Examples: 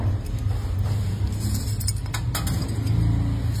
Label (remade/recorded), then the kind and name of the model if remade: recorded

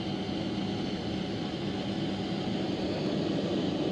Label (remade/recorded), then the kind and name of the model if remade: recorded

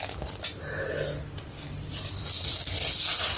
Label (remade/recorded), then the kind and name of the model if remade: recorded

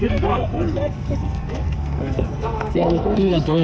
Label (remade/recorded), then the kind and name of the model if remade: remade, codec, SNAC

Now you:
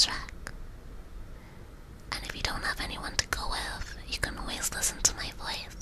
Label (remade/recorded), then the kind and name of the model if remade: recorded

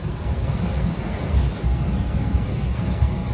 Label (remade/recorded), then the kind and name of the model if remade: remade, codec, SNAC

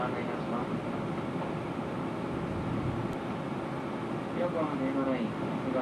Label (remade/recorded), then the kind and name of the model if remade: recorded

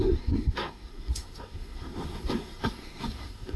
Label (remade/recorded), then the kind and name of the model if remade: remade, codec, SNAC